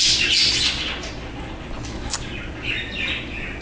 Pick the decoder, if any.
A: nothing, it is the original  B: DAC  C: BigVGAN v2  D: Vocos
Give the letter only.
A